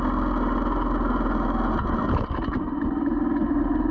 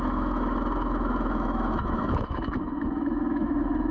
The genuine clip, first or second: first